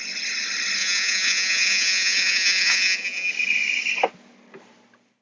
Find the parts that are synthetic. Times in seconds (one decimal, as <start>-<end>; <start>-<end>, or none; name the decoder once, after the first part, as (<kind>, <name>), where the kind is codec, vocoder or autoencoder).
0.8-3.3 (vocoder, Vocos)